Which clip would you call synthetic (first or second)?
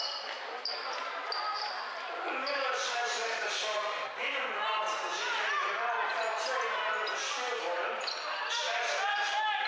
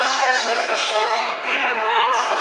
second